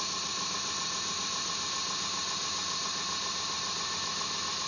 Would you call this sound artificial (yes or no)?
no